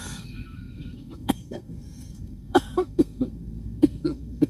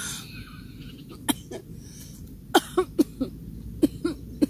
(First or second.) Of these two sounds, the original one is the second